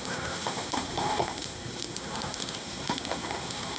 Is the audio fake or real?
fake